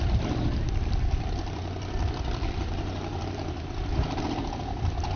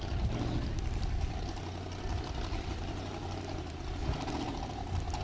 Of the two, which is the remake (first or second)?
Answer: first